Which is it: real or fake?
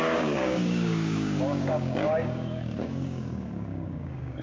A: fake